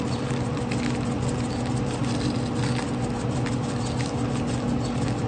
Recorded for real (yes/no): yes